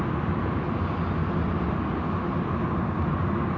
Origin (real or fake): real